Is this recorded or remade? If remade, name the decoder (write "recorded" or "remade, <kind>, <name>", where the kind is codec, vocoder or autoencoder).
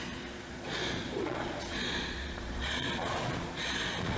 remade, vocoder, Vocos